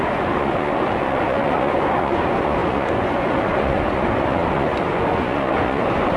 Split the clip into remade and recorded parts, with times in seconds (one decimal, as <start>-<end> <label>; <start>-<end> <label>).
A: 0.0-6.2 remade